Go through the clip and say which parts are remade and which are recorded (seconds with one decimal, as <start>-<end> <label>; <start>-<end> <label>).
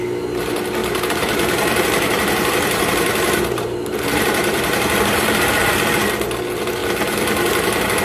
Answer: 0.0-0.8 recorded; 0.8-5.6 remade; 5.6-8.0 recorded